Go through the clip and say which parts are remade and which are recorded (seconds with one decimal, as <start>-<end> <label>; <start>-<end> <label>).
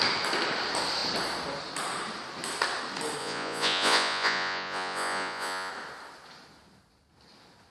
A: 0.0-3.2 recorded; 3.2-5.7 remade; 5.7-7.7 recorded